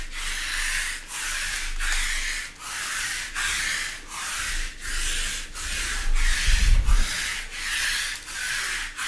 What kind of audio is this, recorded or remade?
recorded